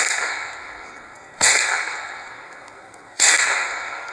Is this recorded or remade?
remade